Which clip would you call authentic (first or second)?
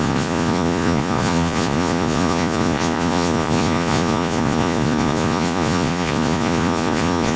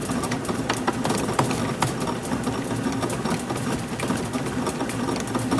second